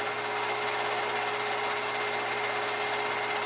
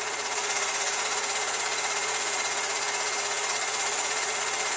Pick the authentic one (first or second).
first